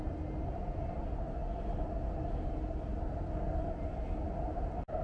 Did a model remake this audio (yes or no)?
no